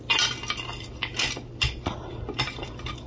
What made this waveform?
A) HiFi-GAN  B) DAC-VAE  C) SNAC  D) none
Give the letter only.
D